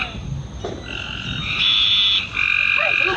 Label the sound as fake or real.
real